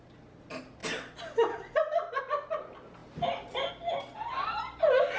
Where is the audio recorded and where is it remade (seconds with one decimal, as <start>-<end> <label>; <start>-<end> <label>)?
0.0-5.2 recorded